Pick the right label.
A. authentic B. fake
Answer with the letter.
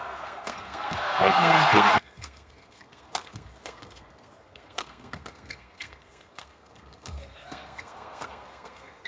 B